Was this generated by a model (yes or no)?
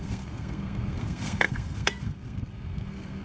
yes